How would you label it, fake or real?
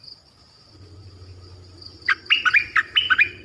real